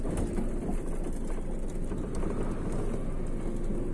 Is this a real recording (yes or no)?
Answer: yes